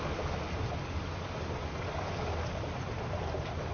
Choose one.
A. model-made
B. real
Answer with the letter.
B